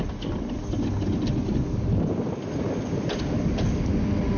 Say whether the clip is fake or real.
real